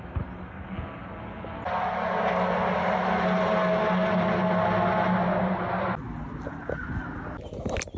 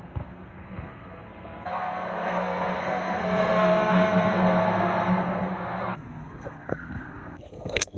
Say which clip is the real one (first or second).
first